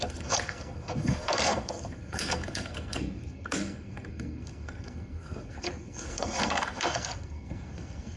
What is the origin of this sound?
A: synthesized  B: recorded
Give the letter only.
A